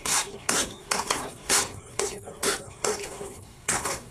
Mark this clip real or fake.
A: fake